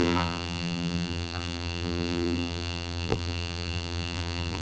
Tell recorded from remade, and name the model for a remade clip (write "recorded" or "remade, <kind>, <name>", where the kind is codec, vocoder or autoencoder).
remade, vocoder, BigVGAN v2